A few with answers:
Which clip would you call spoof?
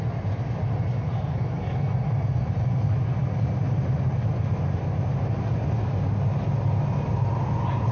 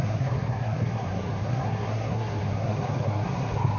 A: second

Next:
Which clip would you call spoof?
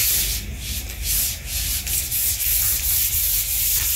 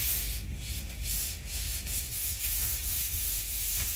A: second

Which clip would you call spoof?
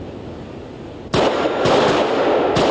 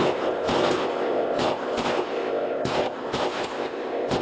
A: second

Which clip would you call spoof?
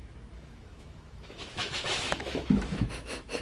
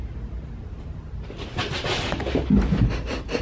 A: first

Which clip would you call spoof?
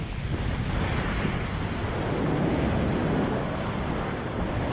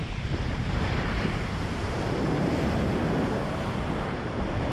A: second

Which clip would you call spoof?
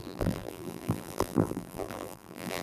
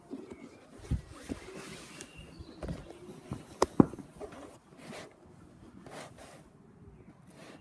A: first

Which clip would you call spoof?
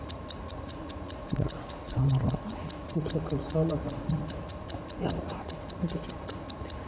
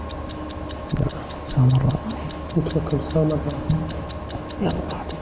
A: first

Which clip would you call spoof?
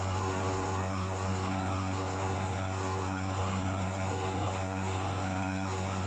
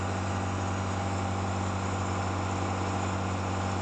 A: first